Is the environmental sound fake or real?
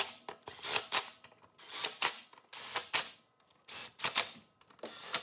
real